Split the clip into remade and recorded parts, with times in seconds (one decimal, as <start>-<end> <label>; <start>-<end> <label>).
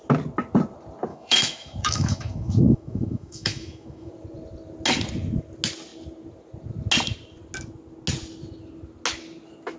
0.0-1.1 recorded; 1.1-4.1 remade; 4.1-9.8 recorded